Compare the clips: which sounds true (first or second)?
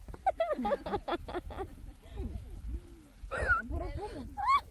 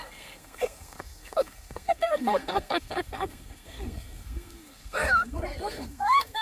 first